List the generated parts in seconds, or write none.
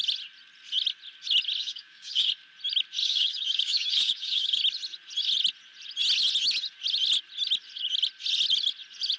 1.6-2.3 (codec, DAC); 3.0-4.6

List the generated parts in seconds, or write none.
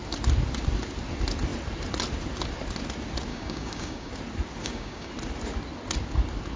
3.3-4.1 (codec, DAC); 4.6-5.1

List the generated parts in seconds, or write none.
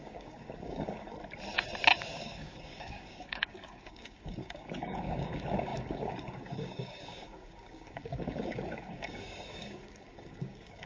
0.0-1.1 (codec, DAC); 2.0-10.9